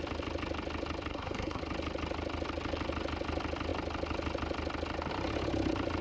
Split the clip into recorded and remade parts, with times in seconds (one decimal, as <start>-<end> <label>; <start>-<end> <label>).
0.0-1.1 recorded; 1.1-1.6 remade; 1.6-6.0 recorded